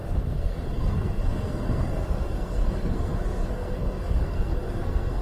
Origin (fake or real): fake